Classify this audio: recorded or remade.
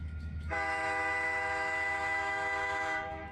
remade